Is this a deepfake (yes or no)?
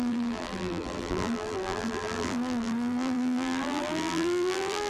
yes